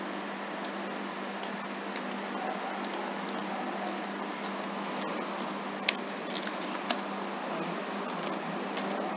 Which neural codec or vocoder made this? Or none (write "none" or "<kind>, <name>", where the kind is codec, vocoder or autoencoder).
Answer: none